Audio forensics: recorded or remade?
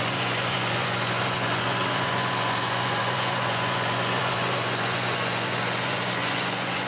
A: remade